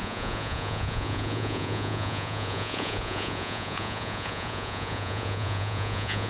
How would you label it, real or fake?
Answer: fake